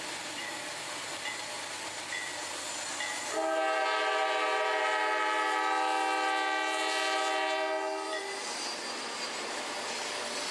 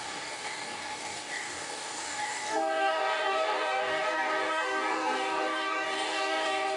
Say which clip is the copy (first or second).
second